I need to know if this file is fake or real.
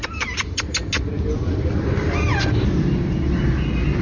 real